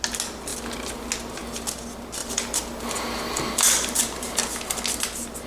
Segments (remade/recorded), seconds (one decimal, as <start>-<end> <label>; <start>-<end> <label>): 0.0-2.2 recorded; 2.2-4.0 remade; 4.0-5.5 recorded